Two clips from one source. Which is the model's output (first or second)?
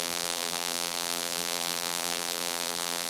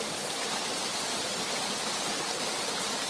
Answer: first